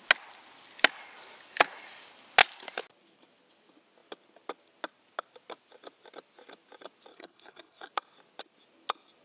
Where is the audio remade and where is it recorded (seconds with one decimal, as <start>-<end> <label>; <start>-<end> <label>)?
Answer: 0.0-7.1 recorded; 7.1-7.9 remade; 7.9-9.2 recorded